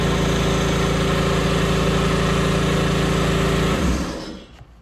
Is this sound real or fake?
real